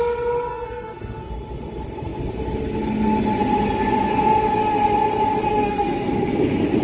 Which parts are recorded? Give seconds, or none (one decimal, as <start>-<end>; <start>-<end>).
0.0-0.5; 1.3-5.5; 6.1-6.8